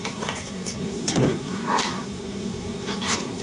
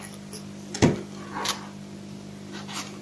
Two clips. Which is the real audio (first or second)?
second